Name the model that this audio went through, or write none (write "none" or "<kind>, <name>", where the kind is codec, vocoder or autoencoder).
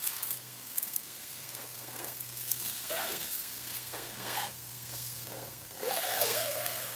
codec, SNAC